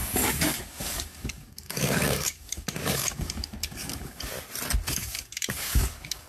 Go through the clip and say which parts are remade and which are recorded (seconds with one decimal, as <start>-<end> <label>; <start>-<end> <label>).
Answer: 0.0-4.3 remade; 4.3-4.9 recorded; 4.9-6.3 remade